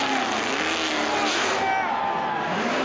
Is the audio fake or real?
real